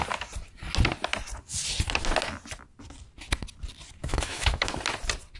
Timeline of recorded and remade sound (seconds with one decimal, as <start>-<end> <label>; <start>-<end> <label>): 0.0-4.0 recorded; 4.0-4.7 remade; 4.7-5.4 recorded